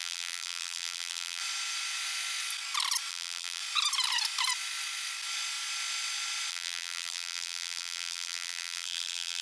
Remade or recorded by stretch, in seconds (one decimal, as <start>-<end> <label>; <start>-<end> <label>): 0.0-1.4 remade; 1.4-3.1 recorded; 3.1-3.6 remade; 3.6-6.5 recorded; 6.5-9.4 remade